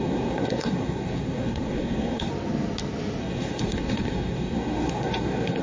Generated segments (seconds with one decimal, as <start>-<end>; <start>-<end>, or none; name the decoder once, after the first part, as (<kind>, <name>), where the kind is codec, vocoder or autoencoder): 0.0-2.3 (codec, SNAC); 3.2-5.6